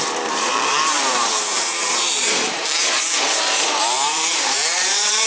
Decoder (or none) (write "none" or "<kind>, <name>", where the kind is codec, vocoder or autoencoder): vocoder, BigVGAN v2